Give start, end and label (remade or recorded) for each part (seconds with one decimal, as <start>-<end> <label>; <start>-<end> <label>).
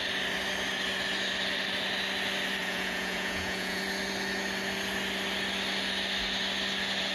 0.0-2.6 recorded; 2.6-3.8 remade; 3.8-7.1 recorded